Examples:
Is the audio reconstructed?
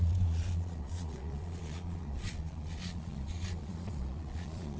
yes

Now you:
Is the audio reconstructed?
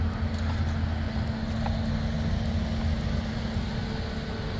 no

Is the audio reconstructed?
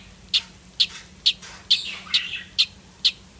no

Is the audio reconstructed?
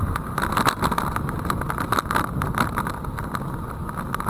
no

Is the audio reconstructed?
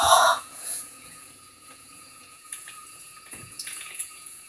yes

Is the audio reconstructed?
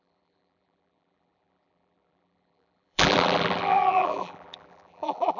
yes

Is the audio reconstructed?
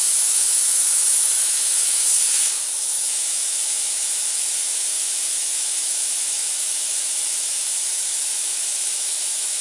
yes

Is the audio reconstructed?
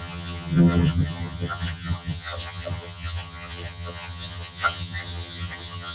yes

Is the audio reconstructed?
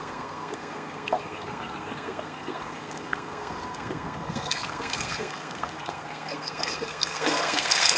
yes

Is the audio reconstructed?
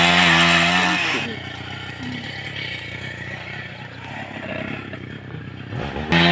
no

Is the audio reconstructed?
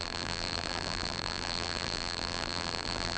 yes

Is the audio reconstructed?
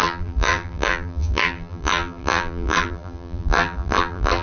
yes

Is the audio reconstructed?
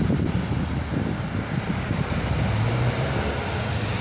no